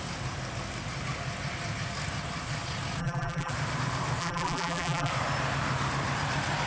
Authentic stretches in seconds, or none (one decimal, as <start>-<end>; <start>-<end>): 0.0-3.0; 3.5-4.2; 5.1-6.7